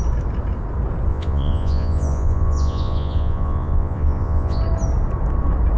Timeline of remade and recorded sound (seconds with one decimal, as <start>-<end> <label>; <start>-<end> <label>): 0.0-1.1 recorded; 1.1-4.6 remade; 4.6-5.8 recorded